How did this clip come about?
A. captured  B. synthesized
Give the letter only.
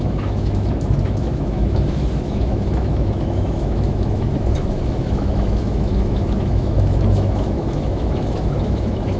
B